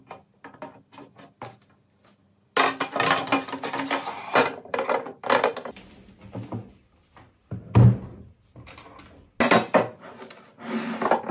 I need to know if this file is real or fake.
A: real